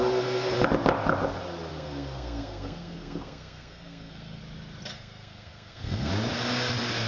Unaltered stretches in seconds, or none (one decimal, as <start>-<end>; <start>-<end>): 0.0-1.7; 4.4-4.9; 6.1-7.1